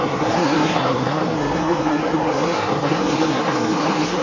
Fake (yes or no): yes